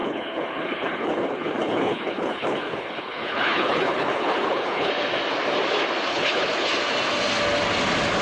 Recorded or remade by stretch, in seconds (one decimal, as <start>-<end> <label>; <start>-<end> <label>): 0.0-4.9 remade; 4.9-6.1 recorded; 6.1-6.7 remade; 6.7-8.2 recorded